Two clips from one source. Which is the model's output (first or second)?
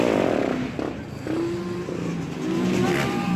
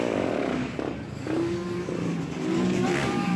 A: second